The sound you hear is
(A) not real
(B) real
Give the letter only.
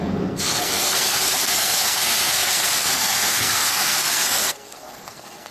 A